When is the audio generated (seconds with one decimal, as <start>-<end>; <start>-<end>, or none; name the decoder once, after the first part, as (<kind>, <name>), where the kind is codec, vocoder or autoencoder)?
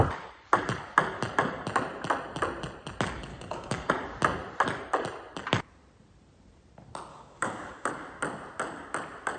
3.3-3.9 (codec, DAC); 7.1-7.9